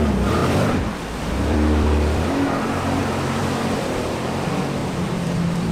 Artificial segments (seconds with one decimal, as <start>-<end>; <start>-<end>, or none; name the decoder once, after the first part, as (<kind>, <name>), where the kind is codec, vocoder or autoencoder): 0.4-3.0 (vocoder, BigVGAN v2); 3.4-4.1; 4.8-5.7